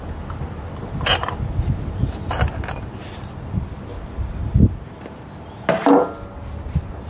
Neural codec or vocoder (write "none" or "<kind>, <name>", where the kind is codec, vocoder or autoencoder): none